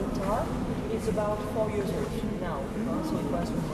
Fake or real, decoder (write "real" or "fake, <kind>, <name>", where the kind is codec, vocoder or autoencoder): real